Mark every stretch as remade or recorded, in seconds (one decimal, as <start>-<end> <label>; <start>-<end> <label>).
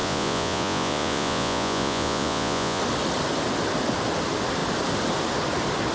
0.0-2.8 remade; 2.8-5.9 recorded